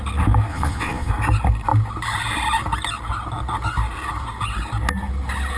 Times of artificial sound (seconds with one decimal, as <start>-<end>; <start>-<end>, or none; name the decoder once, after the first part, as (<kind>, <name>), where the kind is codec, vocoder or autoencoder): 0.5-1.1 (vocoder, Vocos)